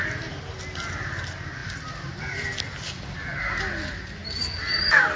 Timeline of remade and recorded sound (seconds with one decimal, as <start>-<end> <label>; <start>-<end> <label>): 0.0-5.2 recorded